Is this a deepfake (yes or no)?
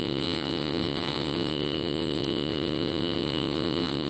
yes